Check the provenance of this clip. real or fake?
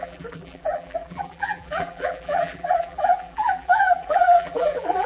fake